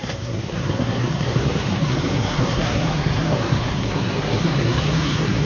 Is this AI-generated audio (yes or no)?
yes